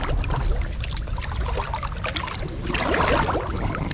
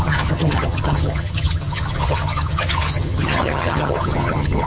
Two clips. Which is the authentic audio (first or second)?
first